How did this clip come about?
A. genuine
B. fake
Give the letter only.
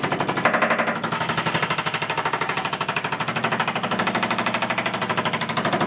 A